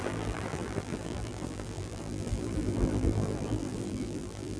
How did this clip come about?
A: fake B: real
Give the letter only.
A